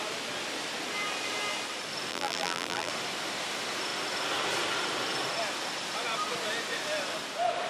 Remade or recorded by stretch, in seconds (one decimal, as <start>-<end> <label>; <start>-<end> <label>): 0.0-2.1 recorded; 2.1-2.9 remade; 2.9-7.7 recorded